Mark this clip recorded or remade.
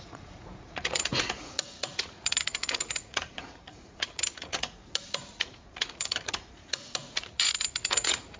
remade